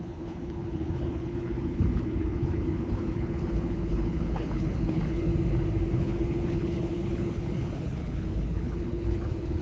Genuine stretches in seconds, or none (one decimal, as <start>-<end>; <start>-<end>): 5.3-5.9